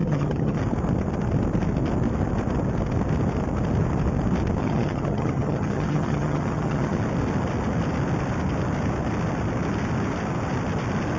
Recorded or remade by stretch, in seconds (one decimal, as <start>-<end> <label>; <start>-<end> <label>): 0.0-0.6 remade; 0.6-4.6 recorded; 4.6-7.0 remade; 7.0-11.2 recorded